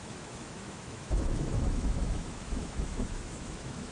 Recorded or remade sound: remade